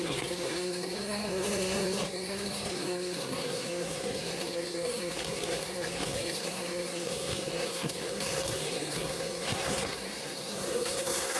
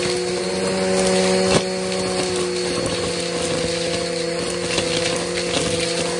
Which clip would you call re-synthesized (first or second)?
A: first